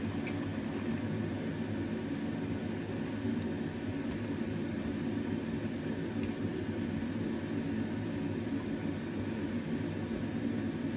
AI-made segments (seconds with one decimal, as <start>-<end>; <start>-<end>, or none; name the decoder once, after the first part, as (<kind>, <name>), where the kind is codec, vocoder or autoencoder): none